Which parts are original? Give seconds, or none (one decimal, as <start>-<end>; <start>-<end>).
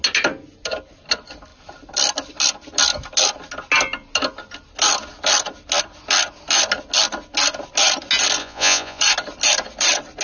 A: 0.0-8.4; 9.0-10.2